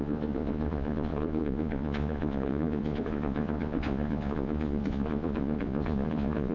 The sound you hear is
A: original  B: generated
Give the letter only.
B